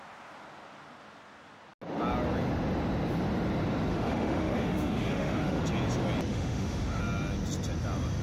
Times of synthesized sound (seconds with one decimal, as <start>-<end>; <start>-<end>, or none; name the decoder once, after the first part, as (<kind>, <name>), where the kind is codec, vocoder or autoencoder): 3.9-5.6 (autoencoder, DAC-VAE); 6.3-7.0